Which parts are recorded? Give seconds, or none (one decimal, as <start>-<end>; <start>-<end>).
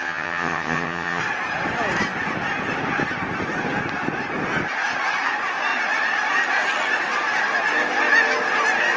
1.2-9.0